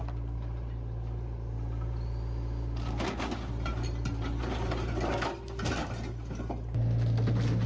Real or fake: real